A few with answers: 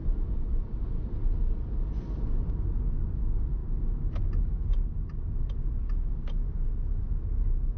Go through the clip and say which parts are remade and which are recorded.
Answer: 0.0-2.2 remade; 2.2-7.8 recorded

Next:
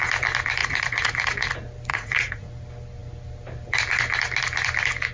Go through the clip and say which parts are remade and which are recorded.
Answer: 0.0-0.6 recorded; 0.6-1.5 remade; 1.5-1.9 recorded; 1.9-2.5 remade; 2.5-5.1 recorded

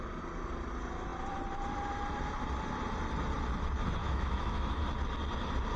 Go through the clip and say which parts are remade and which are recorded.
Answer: 0.0-4.0 recorded; 4.0-4.8 remade; 4.8-5.8 recorded

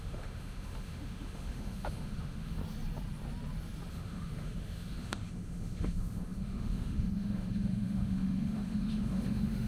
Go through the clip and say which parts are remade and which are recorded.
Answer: 0.0-2.6 remade; 2.6-3.9 recorded; 3.9-9.7 remade

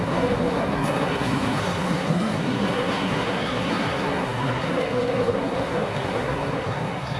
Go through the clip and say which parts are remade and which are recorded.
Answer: 0.0-7.2 remade

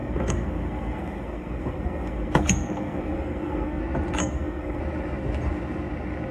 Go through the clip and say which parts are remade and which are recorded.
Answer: 0.0-3.8 remade; 3.8-4.2 recorded; 4.2-4.8 remade; 4.8-6.3 recorded

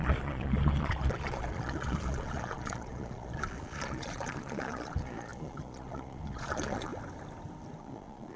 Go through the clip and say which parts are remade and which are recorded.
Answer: 0.0-6.9 remade; 6.9-7.8 recorded; 7.8-8.4 remade

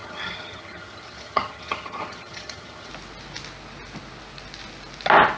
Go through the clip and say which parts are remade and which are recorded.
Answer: 0.0-2.9 remade; 2.9-5.4 recorded